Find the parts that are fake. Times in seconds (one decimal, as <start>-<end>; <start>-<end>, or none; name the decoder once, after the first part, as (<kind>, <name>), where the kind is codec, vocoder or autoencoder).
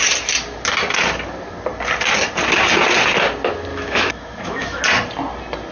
3.7-4.8 (autoencoder, DAC-VAE)